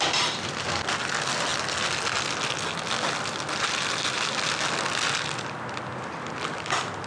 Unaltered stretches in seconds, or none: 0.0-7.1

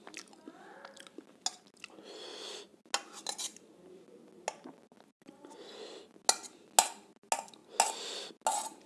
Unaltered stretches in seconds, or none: 0.0-8.9

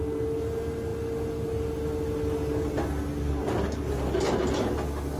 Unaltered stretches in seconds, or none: 0.0-5.2

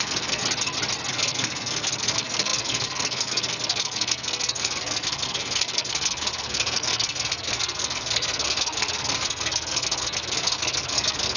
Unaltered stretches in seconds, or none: 0.4-1.1